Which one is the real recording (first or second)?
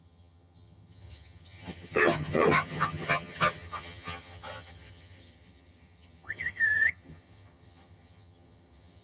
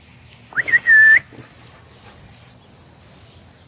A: second